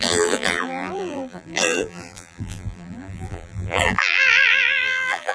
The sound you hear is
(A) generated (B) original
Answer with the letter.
A